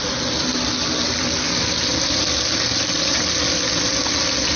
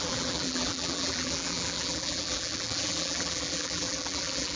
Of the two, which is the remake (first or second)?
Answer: second